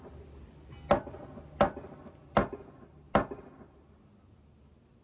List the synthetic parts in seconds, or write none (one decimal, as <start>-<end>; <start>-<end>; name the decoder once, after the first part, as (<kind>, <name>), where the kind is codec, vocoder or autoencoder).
none